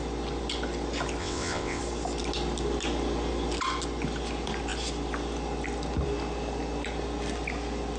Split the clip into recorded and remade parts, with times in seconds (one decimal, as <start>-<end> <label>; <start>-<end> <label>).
0.0-1.2 recorded; 1.2-1.8 remade; 1.8-8.0 recorded